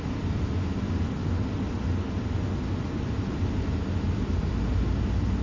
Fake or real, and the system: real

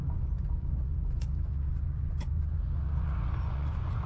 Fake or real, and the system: fake, vocoder, Vocos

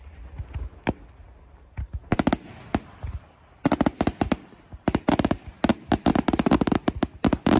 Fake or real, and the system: real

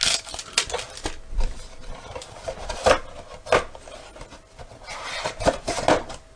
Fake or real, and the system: real